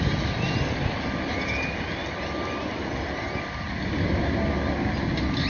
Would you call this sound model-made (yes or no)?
no